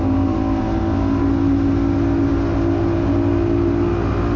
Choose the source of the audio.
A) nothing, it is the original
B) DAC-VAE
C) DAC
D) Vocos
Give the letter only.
A